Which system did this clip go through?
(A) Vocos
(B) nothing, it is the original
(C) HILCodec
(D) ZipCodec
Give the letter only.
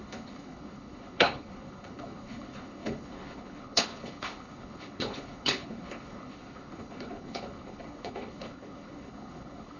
C